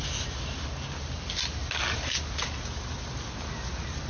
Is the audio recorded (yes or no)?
yes